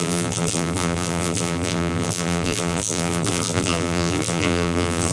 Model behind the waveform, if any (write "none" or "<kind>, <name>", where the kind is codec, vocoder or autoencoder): vocoder, BigVGAN v2